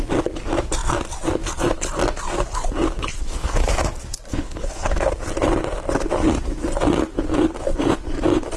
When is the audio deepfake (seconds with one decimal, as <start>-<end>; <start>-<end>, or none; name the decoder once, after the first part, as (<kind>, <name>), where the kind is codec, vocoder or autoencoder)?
3.1-3.7 (codec, HILCodec); 4.3-5.1